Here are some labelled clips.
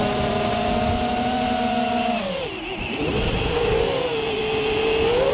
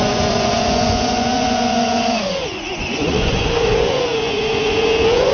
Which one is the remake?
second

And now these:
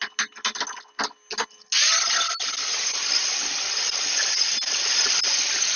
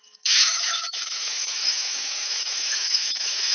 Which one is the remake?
second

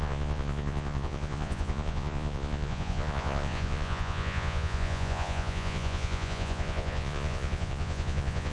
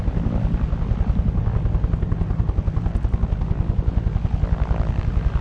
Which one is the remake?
first